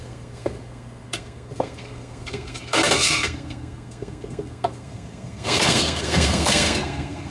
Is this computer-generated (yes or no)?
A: yes